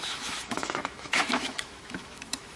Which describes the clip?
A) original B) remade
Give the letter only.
B